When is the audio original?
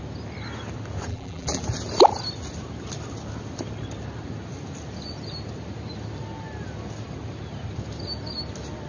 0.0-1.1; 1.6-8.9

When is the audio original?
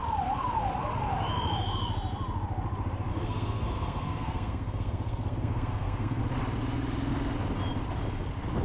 0.0-3.1; 6.2-8.6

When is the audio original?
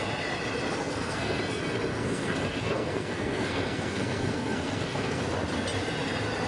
0.0-0.8; 1.4-1.9; 5.2-6.5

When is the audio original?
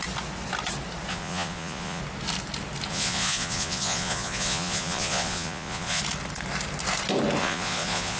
0.0-1.1; 2.0-2.9; 6.0-7.4